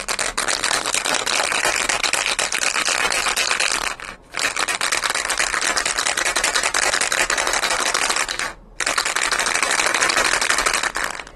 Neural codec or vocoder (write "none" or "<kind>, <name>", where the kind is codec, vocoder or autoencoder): none